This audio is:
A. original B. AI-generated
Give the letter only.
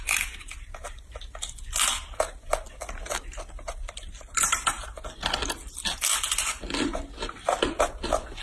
A